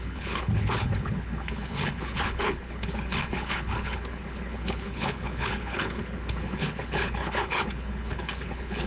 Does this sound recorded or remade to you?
remade